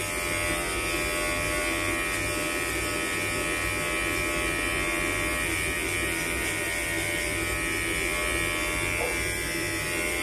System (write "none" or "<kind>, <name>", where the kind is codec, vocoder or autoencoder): none